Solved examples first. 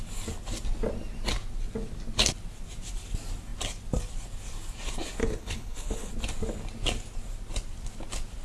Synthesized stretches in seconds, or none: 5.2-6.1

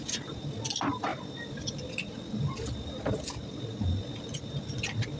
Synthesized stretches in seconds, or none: none

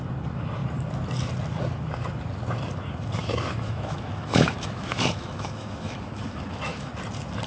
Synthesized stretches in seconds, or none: 3.2-6.9